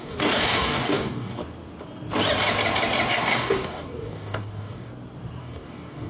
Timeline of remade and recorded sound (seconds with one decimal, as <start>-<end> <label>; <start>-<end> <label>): 0.0-1.4 remade; 1.4-3.1 recorded; 3.1-4.9 remade; 4.9-5.4 recorded; 5.4-6.1 remade